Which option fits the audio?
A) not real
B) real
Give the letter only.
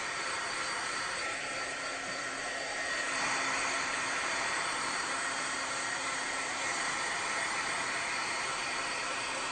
A